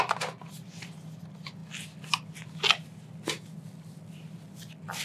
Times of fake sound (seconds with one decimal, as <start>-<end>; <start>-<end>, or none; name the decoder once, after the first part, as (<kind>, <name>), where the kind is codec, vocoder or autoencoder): none